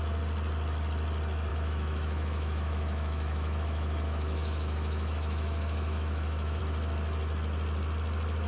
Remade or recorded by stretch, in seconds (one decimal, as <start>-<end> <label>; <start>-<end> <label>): 0.0-1.5 recorded; 1.5-6.6 remade; 6.6-8.5 recorded